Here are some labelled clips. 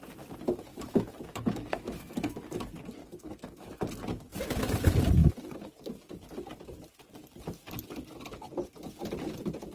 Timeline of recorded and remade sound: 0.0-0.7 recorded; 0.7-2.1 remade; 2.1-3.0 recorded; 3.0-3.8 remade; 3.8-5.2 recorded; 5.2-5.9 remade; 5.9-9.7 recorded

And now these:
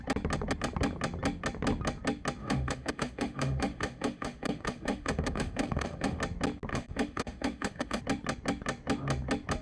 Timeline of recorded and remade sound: 0.0-2.4 recorded; 2.4-6.2 remade; 6.2-6.7 recorded; 6.7-8.0 remade; 8.0-9.6 recorded

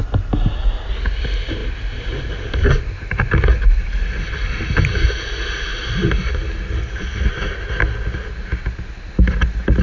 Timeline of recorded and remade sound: 0.0-9.8 recorded

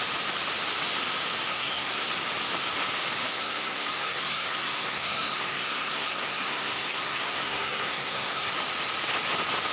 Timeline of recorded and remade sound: 0.0-1.5 recorded; 1.5-2.1 remade; 2.1-3.3 recorded; 3.3-8.5 remade; 8.5-9.7 recorded